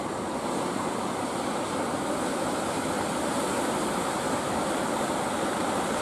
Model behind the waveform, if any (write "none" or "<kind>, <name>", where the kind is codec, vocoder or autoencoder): vocoder, BigVGAN v2